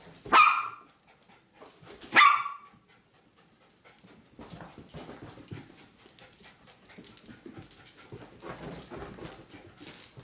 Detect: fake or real real